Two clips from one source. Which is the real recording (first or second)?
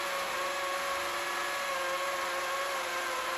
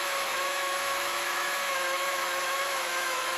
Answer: first